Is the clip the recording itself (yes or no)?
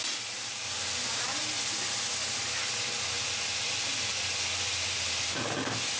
yes